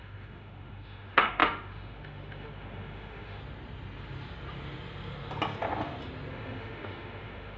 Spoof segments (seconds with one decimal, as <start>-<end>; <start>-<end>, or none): 0.0-3.4; 6.3-7.6